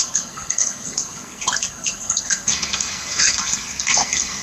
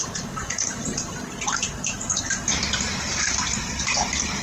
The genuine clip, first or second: second